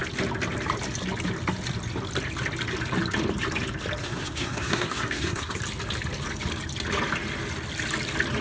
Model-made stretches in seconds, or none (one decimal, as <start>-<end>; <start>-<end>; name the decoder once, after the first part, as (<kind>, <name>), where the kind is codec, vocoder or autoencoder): 4.0-5.6 (codec, SNAC)